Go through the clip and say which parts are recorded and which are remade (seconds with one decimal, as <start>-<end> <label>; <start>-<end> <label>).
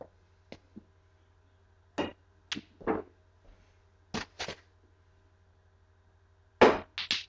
0.0-7.3 recorded